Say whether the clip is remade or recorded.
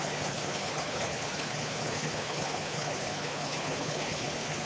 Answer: remade